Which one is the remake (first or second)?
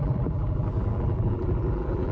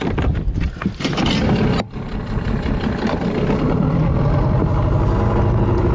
first